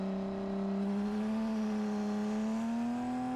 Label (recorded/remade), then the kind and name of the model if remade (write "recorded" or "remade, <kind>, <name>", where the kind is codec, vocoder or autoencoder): recorded